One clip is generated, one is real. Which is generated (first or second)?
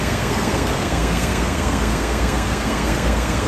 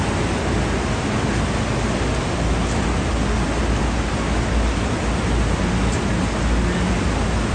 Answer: first